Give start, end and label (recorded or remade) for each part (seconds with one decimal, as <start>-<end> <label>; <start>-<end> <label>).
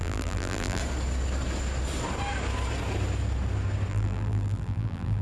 0.0-0.8 remade; 0.8-3.9 recorded; 3.9-5.2 remade